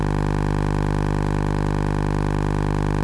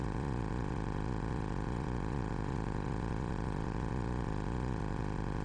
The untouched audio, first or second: first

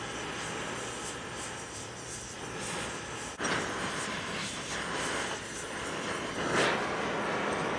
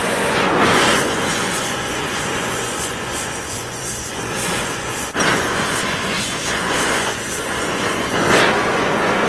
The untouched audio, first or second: first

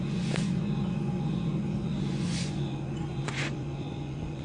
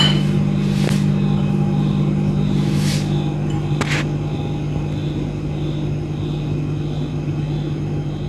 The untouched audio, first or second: second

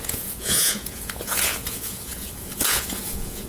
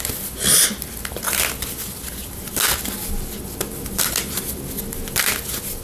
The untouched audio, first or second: second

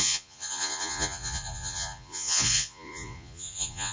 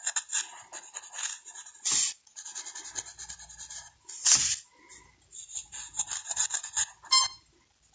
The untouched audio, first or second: second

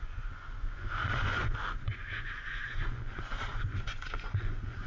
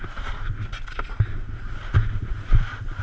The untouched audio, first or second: second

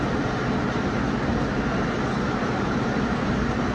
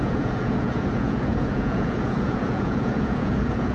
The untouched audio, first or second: first